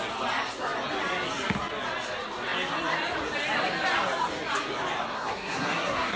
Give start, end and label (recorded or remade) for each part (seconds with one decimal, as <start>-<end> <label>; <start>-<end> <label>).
0.0-5.1 recorded; 5.1-6.2 remade